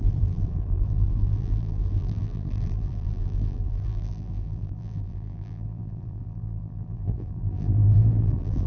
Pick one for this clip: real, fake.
fake